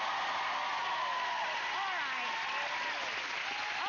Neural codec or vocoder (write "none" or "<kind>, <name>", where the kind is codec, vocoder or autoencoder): none